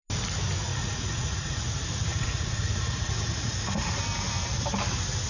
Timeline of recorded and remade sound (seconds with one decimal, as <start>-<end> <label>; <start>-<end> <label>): 0.0-0.7 recorded; 0.7-1.6 remade; 1.6-2.1 recorded; 2.1-4.0 remade; 4.0-5.3 recorded